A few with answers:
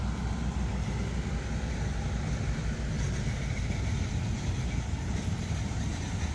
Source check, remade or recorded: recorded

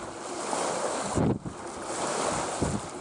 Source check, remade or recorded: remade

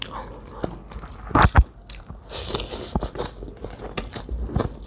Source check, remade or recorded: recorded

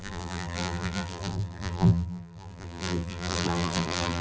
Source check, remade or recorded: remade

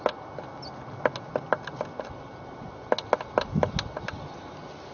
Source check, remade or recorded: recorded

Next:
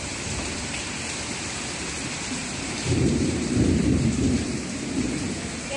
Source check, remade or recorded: remade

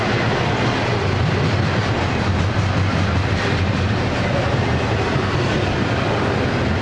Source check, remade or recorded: recorded